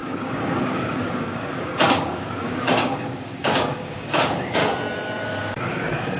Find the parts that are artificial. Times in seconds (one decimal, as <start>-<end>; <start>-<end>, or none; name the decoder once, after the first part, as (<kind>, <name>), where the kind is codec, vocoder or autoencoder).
0.0-4.6 (codec, DAC); 5.2-6.2